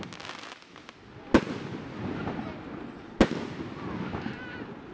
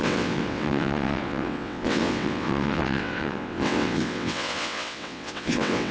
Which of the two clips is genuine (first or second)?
first